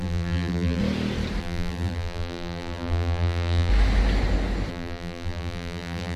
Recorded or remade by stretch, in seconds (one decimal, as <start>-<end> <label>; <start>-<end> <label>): 0.0-0.8 remade; 0.8-1.4 recorded; 1.4-3.7 remade; 3.7-4.7 recorded; 4.7-6.2 remade